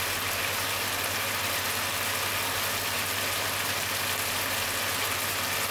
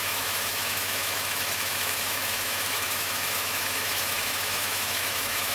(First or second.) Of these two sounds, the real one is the first